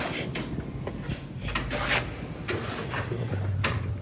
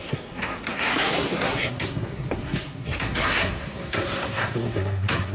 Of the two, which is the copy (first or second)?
second